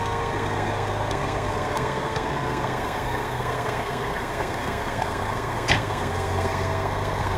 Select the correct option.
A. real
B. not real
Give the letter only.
B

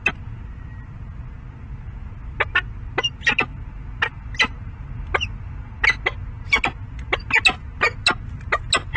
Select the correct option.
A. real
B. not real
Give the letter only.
A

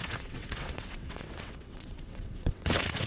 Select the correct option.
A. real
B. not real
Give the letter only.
B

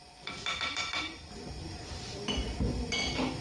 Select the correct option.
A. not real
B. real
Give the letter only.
A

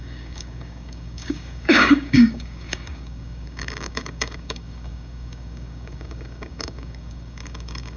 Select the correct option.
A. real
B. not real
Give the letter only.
B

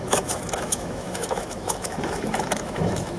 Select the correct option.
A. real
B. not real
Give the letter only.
B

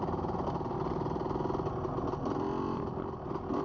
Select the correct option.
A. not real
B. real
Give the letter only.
B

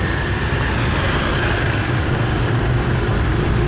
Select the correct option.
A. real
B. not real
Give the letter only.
A